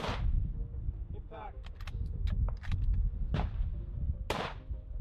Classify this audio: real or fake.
real